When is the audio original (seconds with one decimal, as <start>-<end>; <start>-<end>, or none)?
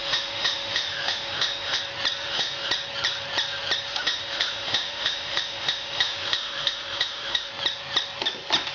1.8-2.2; 2.7-3.9; 7.5-8.7